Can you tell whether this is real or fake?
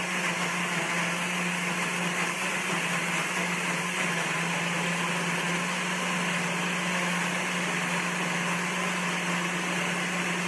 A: real